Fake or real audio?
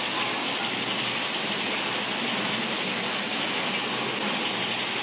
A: real